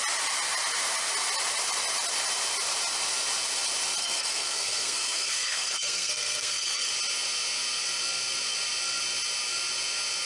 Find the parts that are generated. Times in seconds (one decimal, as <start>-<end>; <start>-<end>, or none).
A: 4.0-6.9